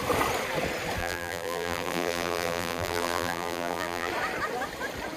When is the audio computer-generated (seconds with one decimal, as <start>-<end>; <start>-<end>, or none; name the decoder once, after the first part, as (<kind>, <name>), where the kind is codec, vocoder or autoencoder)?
1.0-4.1 (vocoder, BigVGAN v2)